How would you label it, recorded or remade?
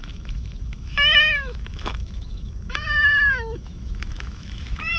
remade